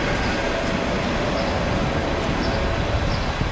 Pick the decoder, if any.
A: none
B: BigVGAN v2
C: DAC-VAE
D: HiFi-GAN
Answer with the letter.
A